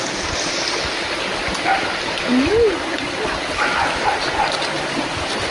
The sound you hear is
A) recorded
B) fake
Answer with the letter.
A